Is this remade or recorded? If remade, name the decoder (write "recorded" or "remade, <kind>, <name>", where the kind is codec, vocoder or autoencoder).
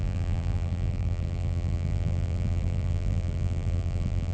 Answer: remade, vocoder, BigVGAN v2